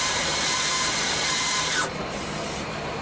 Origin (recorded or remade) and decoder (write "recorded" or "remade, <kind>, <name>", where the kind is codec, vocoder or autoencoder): remade, vocoder, BigVGAN v2